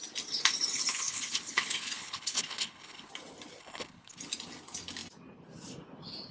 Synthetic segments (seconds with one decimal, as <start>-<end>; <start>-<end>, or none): 0.9-3.1; 3.6-4.2